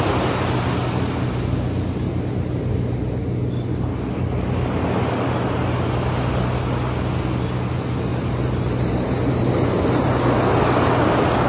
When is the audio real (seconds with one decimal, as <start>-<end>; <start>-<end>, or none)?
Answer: 0.0-11.5